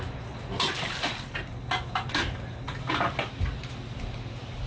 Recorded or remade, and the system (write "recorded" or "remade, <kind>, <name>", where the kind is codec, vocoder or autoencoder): recorded